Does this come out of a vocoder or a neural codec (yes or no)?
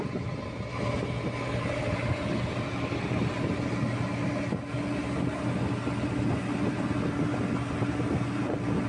no